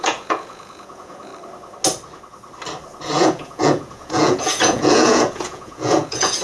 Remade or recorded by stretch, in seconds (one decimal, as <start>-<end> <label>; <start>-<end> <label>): 0.0-1.3 remade; 1.3-3.0 recorded; 3.0-6.4 remade